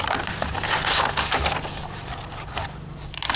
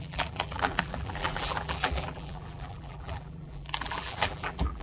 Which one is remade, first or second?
second